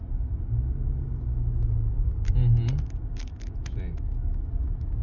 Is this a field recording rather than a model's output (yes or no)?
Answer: yes